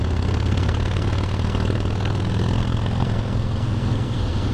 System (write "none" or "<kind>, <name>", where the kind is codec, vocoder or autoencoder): codec, SNAC